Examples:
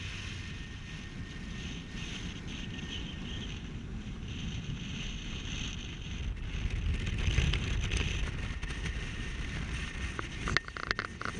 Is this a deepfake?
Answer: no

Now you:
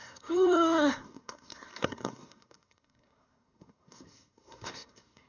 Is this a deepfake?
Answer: yes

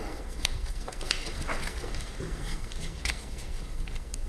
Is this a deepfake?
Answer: yes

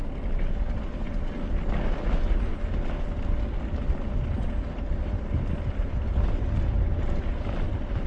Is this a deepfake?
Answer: no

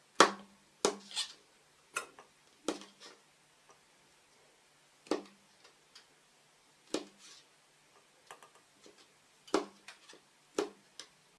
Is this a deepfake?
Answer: no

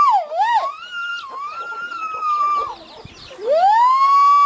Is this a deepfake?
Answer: no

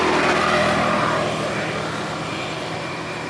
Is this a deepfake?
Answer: no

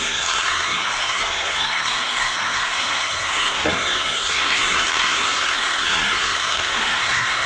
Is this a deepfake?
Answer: yes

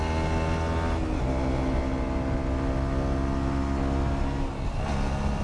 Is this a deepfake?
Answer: no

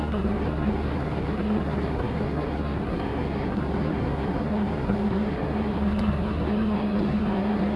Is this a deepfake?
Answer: yes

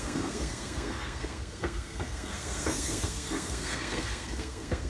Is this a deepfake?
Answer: yes